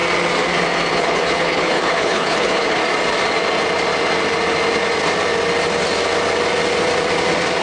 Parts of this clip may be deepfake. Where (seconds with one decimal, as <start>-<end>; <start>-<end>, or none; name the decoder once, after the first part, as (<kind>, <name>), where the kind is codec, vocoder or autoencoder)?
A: 0.9-2.8 (codec, HILCodec)